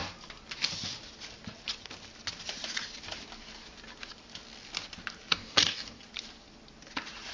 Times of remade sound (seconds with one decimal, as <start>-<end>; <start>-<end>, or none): 5.3-6.0